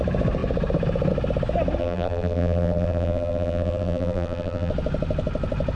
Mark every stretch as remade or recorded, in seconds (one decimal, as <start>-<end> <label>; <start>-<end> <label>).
0.0-1.8 recorded; 1.8-4.7 remade; 4.7-5.8 recorded